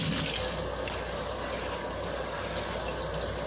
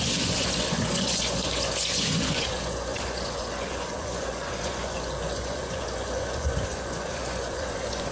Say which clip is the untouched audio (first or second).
first